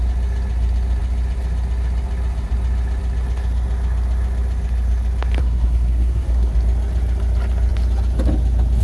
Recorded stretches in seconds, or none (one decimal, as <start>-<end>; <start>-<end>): 0.0-5.4; 6.5-8.8